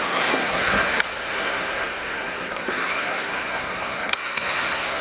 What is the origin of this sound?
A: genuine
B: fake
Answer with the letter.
B